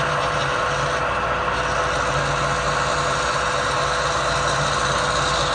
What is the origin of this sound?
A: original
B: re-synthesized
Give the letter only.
A